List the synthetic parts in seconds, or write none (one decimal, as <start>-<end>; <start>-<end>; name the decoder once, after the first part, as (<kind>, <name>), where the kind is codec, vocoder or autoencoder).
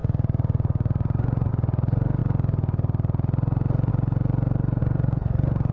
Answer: 0.0-1.5 (vocoder, Vocos); 4.8-5.7